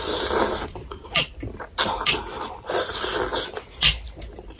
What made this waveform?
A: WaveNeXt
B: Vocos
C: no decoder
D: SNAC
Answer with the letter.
C